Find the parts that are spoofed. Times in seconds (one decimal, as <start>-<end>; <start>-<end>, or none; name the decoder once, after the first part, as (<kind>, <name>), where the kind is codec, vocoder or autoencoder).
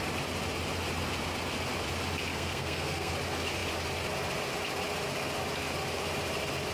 2.3-3.1 (codec, SNAC)